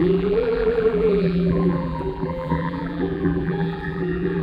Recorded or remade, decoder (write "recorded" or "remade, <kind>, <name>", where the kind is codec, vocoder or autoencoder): remade, vocoder, BigVGAN v2